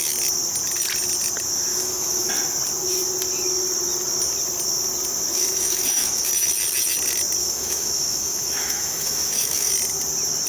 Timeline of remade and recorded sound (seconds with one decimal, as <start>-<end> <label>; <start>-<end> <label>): 0.0-1.7 recorded; 1.7-2.3 remade; 2.3-5.3 recorded; 5.3-6.3 remade; 6.3-7.4 recorded; 7.4-9.7 remade; 9.7-10.5 recorded